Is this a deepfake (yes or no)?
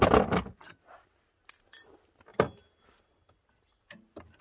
no